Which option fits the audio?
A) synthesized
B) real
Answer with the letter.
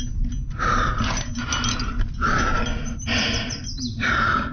B